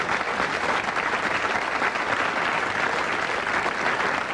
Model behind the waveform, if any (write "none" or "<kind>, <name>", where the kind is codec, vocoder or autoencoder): none